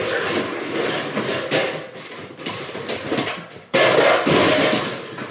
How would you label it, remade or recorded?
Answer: remade